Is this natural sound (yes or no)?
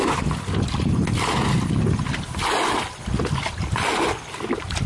yes